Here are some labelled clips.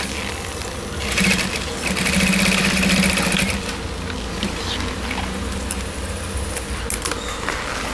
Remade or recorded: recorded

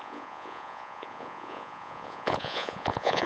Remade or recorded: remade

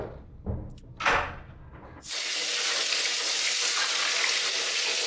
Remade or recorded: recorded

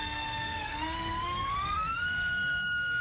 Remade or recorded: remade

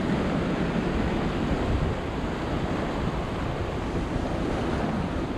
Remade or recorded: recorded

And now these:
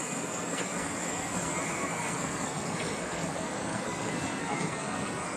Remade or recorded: remade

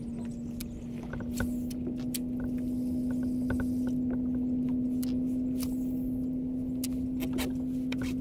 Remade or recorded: recorded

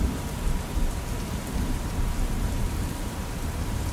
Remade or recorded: remade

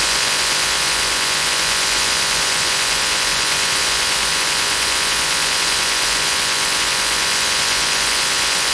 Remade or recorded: remade